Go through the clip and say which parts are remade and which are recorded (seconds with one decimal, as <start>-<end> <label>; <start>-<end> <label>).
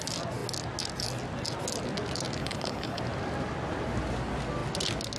0.0-2.4 recorded; 2.4-3.0 remade; 3.0-5.2 recorded